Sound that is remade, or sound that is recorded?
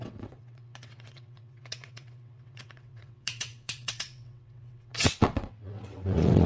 remade